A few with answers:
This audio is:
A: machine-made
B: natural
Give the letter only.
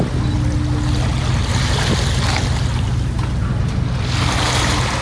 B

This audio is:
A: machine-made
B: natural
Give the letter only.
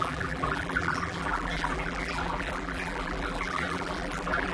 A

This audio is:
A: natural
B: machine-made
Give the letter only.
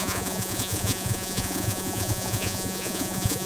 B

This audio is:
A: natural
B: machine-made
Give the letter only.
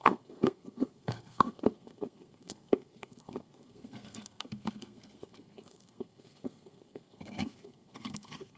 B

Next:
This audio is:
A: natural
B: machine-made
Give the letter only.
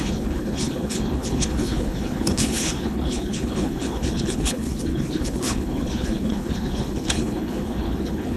B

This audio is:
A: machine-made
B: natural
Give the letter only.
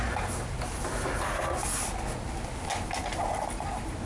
B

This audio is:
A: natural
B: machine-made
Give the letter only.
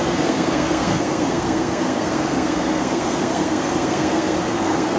B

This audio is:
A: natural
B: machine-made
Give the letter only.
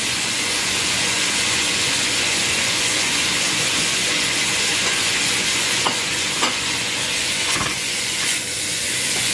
B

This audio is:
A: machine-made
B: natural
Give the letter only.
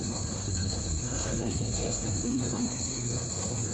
A